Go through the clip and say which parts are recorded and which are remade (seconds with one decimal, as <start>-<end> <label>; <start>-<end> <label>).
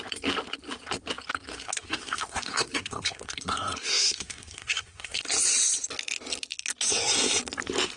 0.0-1.5 recorded; 1.5-5.2 remade; 5.2-8.0 recorded